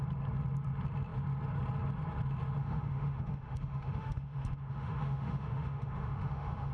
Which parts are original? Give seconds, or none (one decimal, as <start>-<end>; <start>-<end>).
0.0-2.6